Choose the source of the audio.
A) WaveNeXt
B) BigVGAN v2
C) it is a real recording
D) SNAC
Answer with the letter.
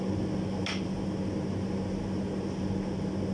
C